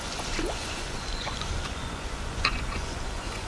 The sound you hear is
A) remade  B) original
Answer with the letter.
A